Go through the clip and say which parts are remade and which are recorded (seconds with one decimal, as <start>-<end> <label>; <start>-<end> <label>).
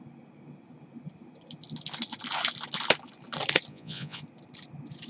0.0-3.7 recorded; 3.7-4.2 remade; 4.2-5.1 recorded